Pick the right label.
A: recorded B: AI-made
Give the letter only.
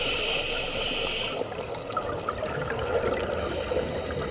A